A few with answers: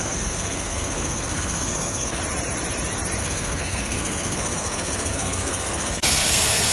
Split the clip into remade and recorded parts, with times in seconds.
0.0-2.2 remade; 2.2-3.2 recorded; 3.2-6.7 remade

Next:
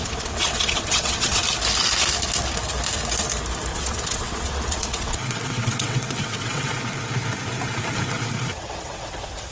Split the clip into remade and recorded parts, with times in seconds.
0.0-1.4 remade; 1.4-3.7 recorded; 3.7-6.8 remade; 6.8-8.5 recorded; 8.5-9.5 remade

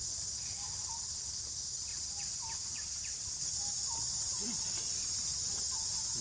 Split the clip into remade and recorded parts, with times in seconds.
0.0-1.9 recorded; 1.9-3.5 remade; 3.5-6.2 recorded

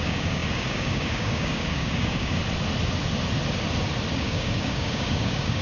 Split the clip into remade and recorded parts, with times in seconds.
0.0-2.4 remade; 2.4-4.1 recorded; 4.1-5.6 remade

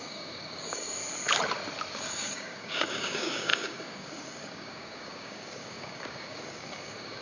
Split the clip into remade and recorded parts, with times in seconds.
0.0-1.0 remade; 1.0-1.9 recorded; 1.9-7.2 remade

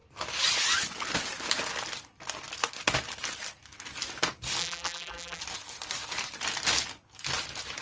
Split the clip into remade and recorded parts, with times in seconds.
0.0-4.6 recorded; 4.6-5.4 remade; 5.4-7.8 recorded

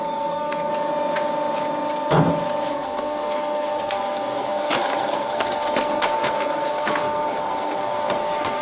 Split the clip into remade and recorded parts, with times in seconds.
0.0-0.7 remade; 0.7-2.7 recorded; 2.7-8.6 remade